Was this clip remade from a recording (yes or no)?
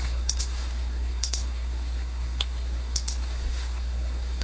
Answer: yes